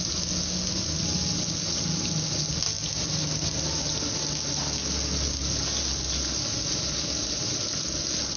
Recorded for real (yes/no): yes